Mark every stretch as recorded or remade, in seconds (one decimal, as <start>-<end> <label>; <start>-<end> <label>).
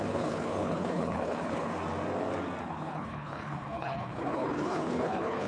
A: 0.0-1.7 remade; 1.7-2.6 recorded; 2.6-5.5 remade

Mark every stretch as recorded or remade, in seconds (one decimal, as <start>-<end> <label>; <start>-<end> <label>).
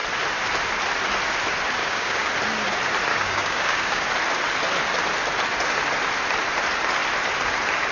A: 0.0-1.8 recorded; 1.8-2.3 remade; 2.3-3.1 recorded; 3.1-4.1 remade; 4.1-7.9 recorded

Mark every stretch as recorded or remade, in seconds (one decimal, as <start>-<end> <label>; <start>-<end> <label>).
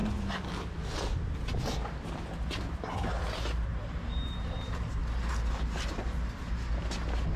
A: 0.0-3.7 recorded; 3.7-5.0 remade; 5.0-7.4 recorded